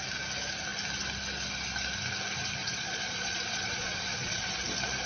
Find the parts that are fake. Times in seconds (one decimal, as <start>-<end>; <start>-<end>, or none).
2.6-4.5